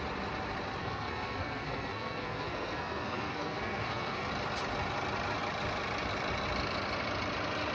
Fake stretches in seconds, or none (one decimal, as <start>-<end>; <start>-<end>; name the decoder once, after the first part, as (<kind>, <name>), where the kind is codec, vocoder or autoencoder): 0.8-4.3 (codec, SNAC)